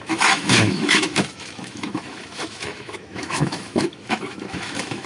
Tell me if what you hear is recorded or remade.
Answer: remade